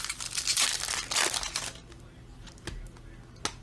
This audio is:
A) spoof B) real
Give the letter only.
B